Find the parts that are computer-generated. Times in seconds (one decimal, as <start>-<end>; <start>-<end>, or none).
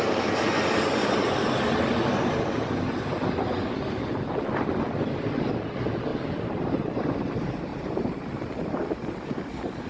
7.7-9.5